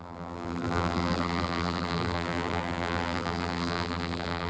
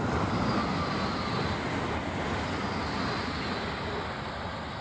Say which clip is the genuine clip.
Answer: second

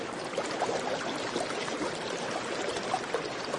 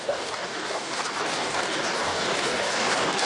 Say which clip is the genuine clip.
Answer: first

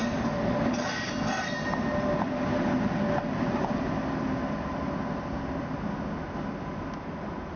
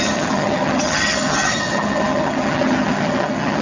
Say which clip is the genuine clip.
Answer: first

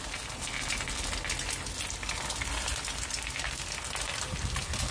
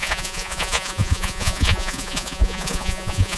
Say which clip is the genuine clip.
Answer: first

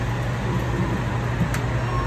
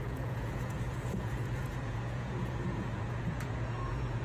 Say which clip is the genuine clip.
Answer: first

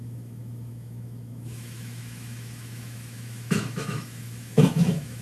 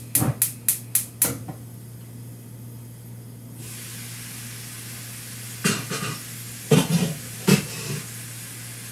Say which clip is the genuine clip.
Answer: second